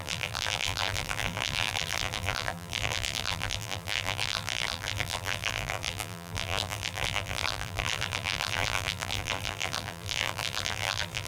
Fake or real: fake